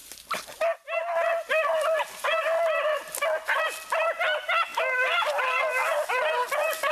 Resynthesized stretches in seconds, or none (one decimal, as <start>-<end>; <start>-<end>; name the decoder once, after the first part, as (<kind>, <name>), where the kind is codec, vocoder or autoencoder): none